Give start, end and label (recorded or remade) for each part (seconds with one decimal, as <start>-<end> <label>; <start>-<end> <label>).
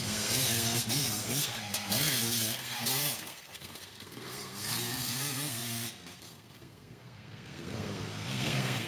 0.0-8.9 remade